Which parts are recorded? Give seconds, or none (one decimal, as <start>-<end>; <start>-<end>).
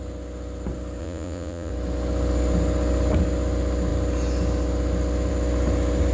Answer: 0.0-1.0; 1.7-6.1